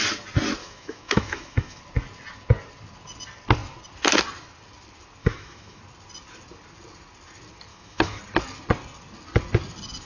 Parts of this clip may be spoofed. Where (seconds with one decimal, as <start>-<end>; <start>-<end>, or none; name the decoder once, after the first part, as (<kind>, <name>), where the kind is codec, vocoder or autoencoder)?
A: 0.6-1.8 (autoencoder, DAC-VAE); 5.2-5.8; 7.7-8.2